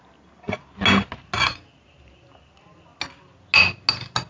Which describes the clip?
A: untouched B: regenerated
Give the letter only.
A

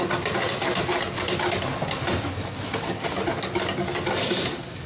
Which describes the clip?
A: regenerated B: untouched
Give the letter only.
B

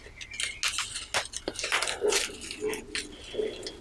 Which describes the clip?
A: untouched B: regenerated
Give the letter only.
A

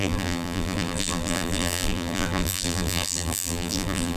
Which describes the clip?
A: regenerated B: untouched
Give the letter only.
A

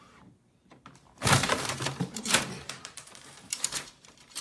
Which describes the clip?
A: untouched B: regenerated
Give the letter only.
B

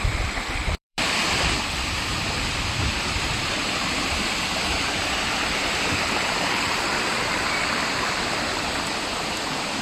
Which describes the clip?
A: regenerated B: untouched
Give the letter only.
A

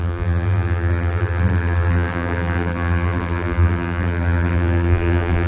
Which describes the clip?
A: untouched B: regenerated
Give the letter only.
B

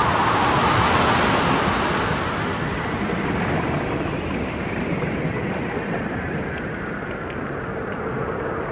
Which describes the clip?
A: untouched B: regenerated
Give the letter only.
A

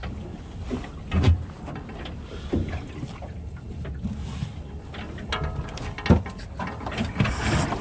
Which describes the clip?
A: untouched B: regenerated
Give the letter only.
A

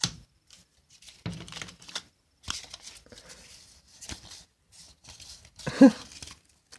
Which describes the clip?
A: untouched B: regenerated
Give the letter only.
A